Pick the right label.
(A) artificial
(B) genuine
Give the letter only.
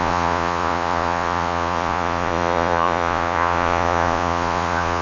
A